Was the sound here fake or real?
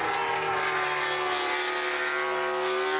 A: real